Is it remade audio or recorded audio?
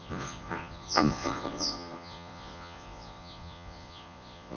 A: remade